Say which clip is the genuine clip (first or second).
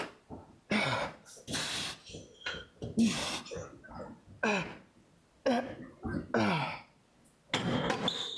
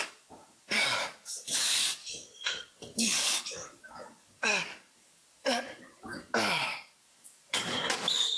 first